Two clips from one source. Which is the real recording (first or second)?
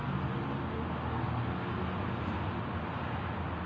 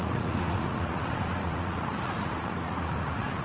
first